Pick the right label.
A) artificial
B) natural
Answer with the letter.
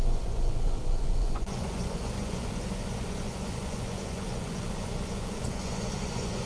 A